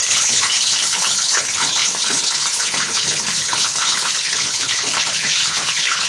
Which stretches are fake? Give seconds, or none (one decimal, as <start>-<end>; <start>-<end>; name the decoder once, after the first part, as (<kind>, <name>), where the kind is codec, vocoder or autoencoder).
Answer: 0.0-6.1 (codec, HILCodec)